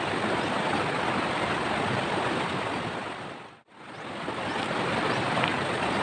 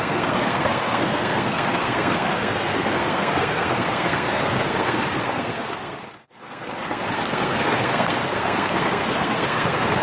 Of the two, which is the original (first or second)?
first